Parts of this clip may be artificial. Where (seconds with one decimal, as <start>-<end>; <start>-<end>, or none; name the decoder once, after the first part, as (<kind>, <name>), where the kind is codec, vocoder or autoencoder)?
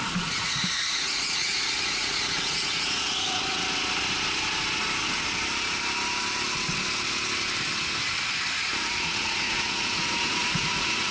0.0-3.4 (vocoder, Vocos); 8.5-11.1